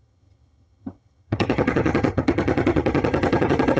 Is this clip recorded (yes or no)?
no